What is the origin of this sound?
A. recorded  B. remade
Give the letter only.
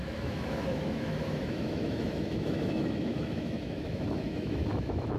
B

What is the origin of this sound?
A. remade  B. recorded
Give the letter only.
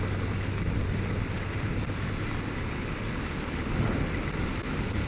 B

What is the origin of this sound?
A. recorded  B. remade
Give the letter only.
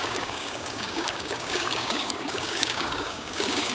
B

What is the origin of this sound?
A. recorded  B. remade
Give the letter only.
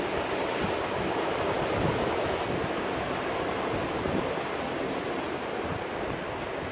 A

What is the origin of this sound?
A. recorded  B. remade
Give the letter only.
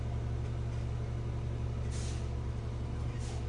A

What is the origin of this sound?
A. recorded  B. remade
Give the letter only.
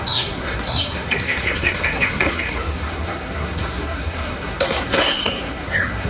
B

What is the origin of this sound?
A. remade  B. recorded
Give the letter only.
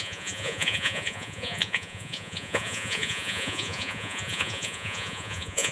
A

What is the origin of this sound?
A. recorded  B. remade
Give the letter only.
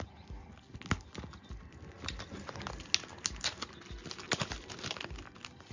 A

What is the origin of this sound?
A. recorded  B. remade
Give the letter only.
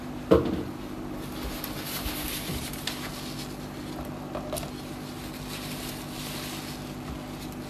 A